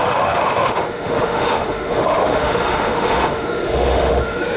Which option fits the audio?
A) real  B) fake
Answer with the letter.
B